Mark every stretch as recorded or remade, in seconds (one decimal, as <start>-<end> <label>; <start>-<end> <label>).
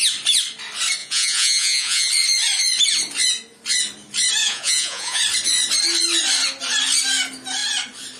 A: 0.0-1.0 recorded; 1.0-2.1 remade; 2.1-4.4 recorded; 4.4-5.2 remade; 5.2-8.2 recorded